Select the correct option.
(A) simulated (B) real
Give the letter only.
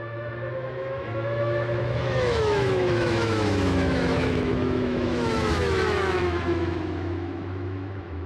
A